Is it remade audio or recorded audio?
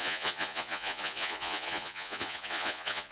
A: remade